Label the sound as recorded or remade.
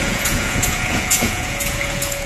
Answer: remade